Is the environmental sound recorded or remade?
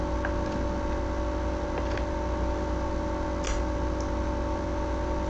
recorded